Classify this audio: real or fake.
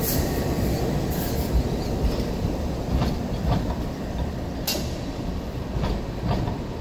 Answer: real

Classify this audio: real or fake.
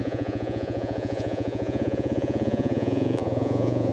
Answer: fake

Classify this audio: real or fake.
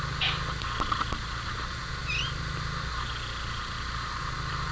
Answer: real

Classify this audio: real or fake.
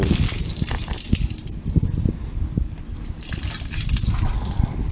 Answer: real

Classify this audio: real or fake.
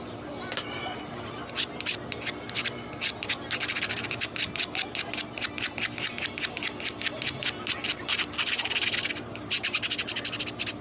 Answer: real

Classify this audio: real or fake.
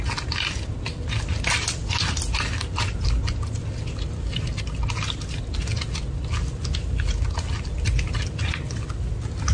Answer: real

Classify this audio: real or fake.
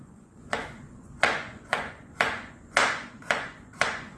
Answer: fake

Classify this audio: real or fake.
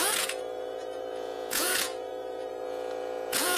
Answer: fake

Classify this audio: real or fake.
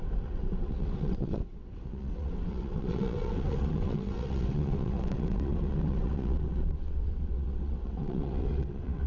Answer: fake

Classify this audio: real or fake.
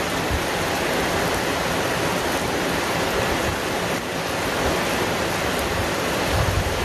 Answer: fake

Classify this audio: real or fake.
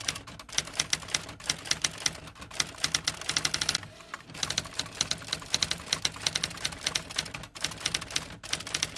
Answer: real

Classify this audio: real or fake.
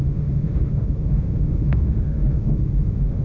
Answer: fake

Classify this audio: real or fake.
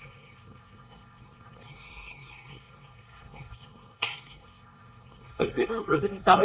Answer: fake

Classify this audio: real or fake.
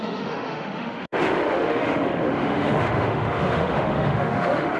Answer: fake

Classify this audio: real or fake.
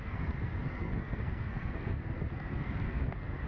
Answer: fake